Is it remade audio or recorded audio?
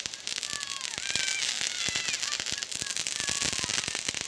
recorded